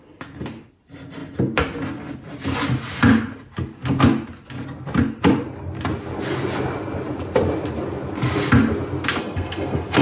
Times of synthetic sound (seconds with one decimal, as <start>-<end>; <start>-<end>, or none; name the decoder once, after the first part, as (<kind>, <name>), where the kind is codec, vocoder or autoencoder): 9.2-10.0 (codec, SNAC)